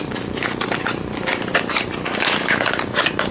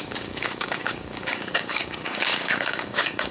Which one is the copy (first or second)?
second